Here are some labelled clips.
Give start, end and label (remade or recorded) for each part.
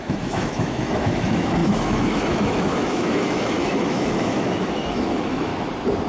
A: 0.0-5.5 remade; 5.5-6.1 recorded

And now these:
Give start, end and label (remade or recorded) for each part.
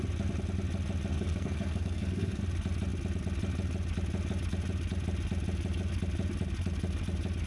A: 0.0-1.1 recorded; 1.1-2.4 remade; 2.4-7.5 recorded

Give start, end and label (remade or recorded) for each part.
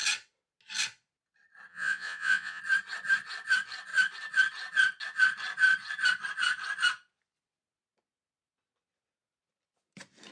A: 0.0-1.7 recorded; 1.7-2.6 remade; 2.6-10.3 recorded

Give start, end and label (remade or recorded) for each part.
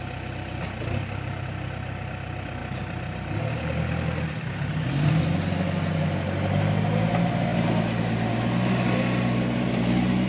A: 0.0-10.3 recorded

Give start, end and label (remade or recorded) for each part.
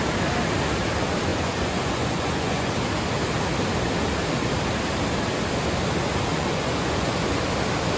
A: 0.0-1.3 recorded; 1.3-2.7 remade; 2.7-6.3 recorded; 6.3-7.4 remade; 7.4-8.0 recorded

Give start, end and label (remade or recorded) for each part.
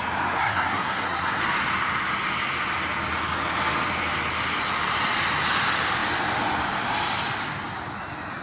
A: 0.0-0.4 recorded; 0.4-1.4 remade; 1.4-8.4 recorded